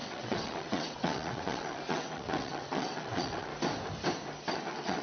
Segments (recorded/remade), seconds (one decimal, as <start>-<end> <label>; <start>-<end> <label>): 0.0-3.5 remade; 3.5-4.5 recorded; 4.5-5.0 remade